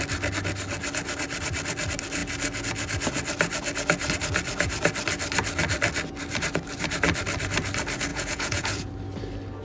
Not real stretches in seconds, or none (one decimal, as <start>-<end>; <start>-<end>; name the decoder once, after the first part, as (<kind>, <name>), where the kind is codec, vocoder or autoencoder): 8.1-8.9 (vocoder, Vocos)